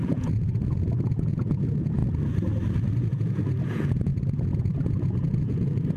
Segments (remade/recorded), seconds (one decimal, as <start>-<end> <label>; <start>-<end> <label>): 0.0-2.0 remade; 2.0-3.0 recorded; 3.0-6.0 remade